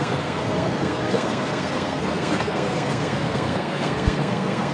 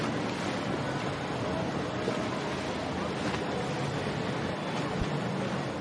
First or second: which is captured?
second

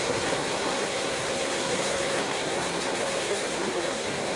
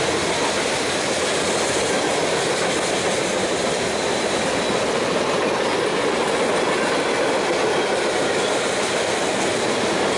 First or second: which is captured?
second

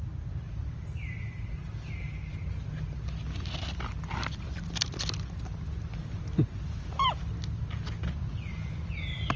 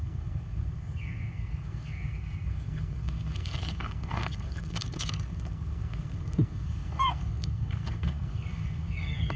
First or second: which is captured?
first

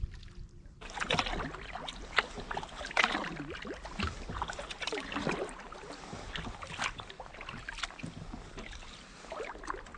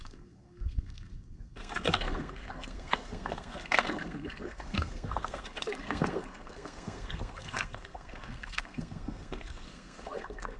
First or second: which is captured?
first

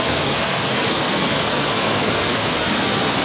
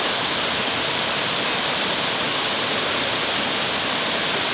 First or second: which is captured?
second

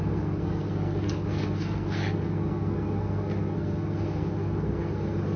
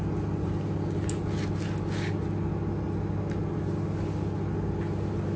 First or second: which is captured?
second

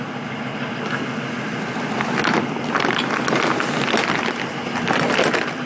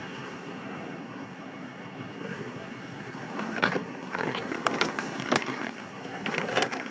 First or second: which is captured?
first